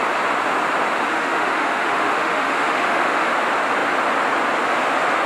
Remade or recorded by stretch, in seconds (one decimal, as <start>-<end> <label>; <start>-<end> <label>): 0.0-1.1 recorded; 1.1-3.3 remade; 3.3-5.3 recorded